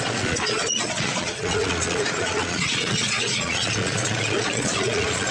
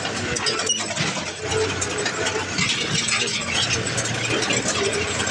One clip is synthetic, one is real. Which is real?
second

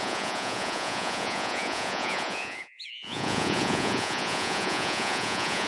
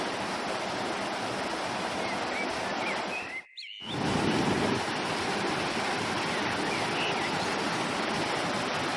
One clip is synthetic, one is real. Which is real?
second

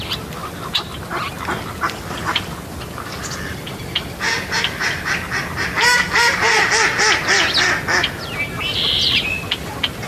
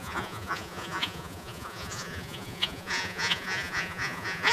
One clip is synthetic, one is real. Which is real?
first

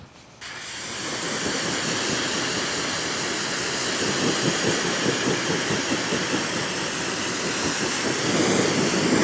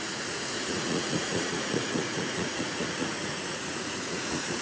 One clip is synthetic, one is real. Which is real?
first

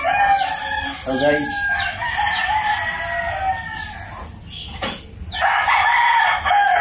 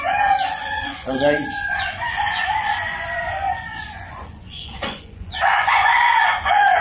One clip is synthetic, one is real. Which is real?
first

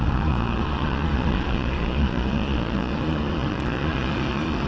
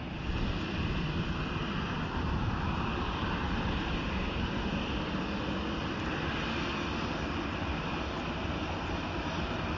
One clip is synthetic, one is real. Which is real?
second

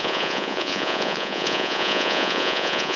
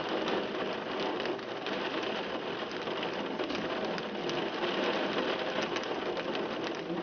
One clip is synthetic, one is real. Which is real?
second